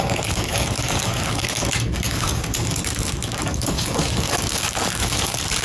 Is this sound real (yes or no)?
no